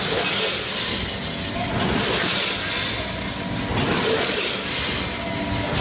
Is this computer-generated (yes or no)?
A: no